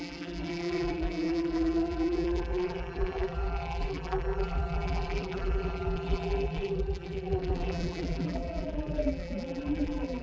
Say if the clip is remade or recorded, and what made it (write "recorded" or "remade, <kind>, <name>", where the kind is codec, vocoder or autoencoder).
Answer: remade, vocoder, BigVGAN v2